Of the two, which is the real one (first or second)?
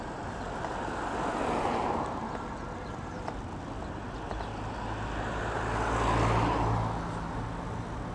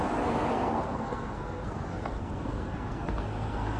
first